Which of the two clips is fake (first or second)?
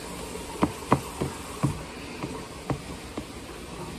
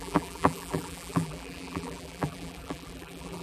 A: second